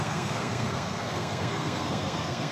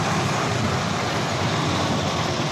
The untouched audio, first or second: second